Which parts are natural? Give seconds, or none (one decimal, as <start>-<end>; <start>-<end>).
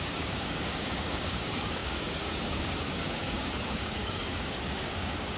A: none